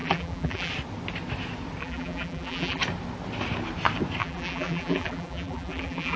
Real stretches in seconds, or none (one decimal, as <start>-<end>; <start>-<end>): 0.7-1.8; 2.8-4.2